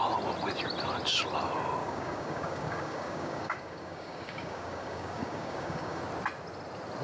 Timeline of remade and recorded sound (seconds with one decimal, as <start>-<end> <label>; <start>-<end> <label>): 0.0-1.8 recorded; 1.8-6.0 remade; 6.0-7.0 recorded